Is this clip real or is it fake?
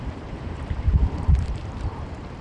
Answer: fake